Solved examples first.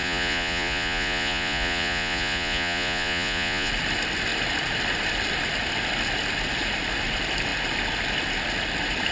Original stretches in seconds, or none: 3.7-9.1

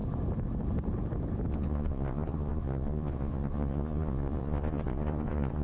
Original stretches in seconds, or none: 0.0-1.5

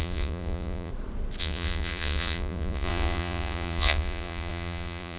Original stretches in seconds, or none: 0.9-1.4

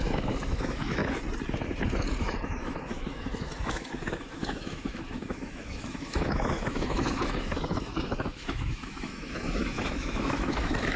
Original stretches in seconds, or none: 1.0-2.2

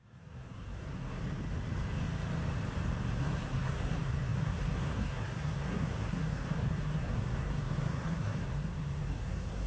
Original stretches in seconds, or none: 1.2-3.2